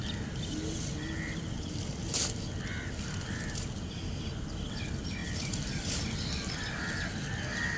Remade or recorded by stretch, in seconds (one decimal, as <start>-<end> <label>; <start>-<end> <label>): 0.0-7.8 recorded